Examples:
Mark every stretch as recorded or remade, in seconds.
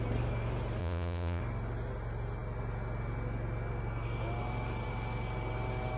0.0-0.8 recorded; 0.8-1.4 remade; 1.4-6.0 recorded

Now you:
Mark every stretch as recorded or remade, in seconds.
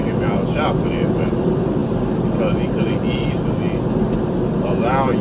0.0-5.2 recorded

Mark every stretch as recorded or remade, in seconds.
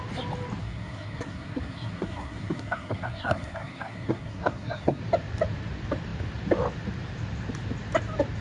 0.0-0.6 recorded; 0.6-5.0 remade; 5.0-8.4 recorded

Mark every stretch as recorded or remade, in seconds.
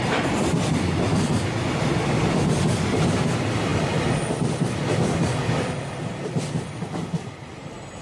0.0-3.7 remade; 3.7-6.4 recorded; 6.4-8.0 remade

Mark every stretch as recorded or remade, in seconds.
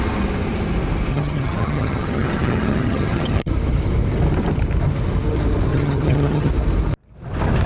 0.0-1.1 recorded; 1.1-3.5 remade; 3.5-5.7 recorded; 5.7-6.5 remade; 6.5-7.7 recorded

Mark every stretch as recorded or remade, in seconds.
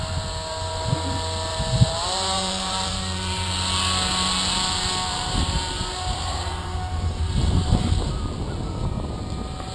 0.0-1.5 recorded; 1.5-3.5 remade; 3.5-5.1 recorded; 5.1-8.1 remade; 8.1-9.7 recorded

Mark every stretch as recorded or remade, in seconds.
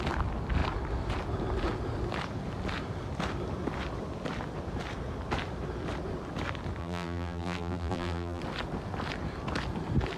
0.0-6.8 recorded; 6.8-8.4 remade; 8.4-10.2 recorded